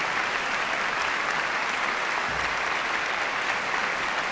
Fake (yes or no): no